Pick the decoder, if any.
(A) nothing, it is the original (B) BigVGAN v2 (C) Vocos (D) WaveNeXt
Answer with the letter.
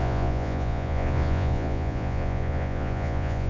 C